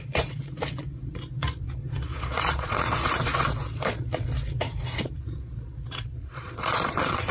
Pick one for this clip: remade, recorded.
remade